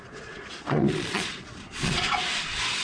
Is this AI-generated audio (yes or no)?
yes